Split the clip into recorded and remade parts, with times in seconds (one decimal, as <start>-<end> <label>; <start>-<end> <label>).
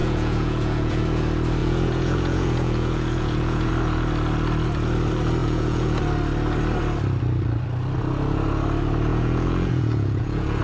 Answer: 0.0-1.0 remade; 1.0-1.6 recorded; 1.6-3.7 remade; 3.7-5.4 recorded; 5.4-6.0 remade; 6.0-9.1 recorded; 9.1-10.6 remade